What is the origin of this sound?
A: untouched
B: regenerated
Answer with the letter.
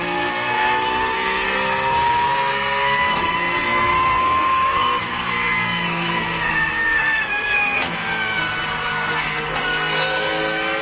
B